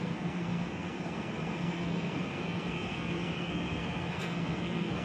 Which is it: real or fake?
fake